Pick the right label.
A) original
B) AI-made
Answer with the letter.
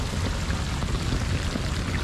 A